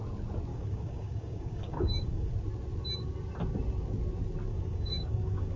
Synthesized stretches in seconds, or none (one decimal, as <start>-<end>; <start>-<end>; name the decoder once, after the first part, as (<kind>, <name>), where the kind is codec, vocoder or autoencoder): 0.5-2.3 (codec, DAC); 4.5-5.6